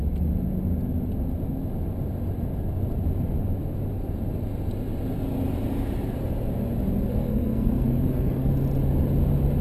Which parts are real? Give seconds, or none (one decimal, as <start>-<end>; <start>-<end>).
0.0-7.1; 8.5-9.6